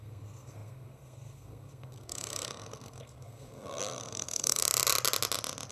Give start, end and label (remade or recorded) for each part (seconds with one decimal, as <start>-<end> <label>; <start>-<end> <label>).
0.0-4.6 remade; 4.6-5.7 recorded